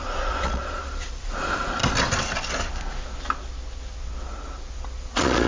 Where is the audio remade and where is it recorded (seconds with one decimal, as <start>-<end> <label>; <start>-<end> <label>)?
0.0-1.8 remade; 1.8-5.1 recorded; 5.1-5.5 remade